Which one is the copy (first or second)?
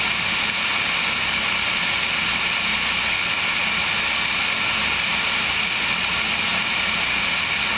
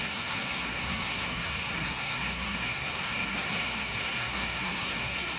second